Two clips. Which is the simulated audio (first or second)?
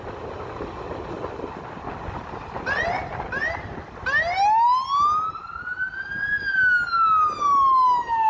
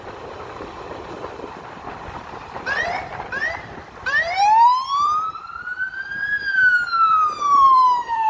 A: second